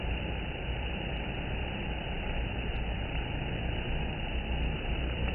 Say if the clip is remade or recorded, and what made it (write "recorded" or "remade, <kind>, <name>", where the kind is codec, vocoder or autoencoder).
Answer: recorded